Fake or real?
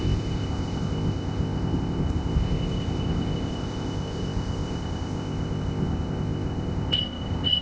fake